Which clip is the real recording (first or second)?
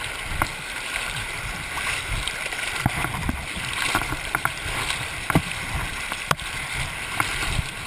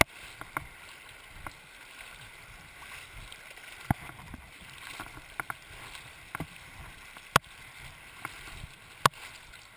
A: second